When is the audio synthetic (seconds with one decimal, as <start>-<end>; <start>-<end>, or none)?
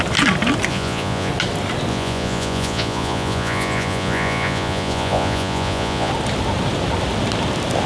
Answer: 0.7-1.3; 1.9-6.1